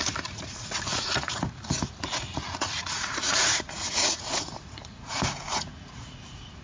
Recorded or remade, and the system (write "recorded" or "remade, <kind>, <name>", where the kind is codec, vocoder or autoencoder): remade, vocoder, Vocos